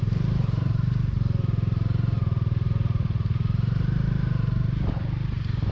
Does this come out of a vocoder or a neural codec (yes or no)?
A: yes